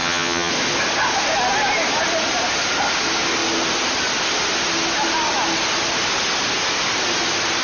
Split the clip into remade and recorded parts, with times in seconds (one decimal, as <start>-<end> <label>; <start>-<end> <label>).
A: 0.0-0.5 remade; 0.5-7.6 recorded